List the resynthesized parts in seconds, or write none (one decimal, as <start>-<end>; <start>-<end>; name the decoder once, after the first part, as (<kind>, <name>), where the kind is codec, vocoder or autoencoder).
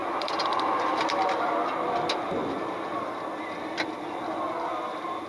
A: 0.0-1.0 (vocoder, BigVGAN v2)